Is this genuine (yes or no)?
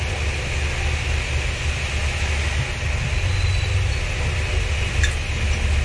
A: yes